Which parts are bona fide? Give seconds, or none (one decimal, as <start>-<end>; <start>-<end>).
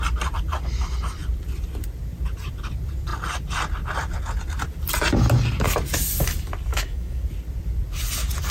0.0-6.7; 7.2-8.5